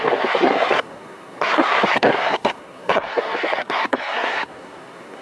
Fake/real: fake